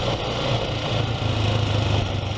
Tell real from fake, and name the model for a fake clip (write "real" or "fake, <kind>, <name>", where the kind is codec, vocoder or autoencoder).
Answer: fake, vocoder, BigVGAN v2